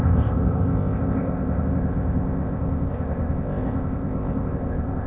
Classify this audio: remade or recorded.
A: remade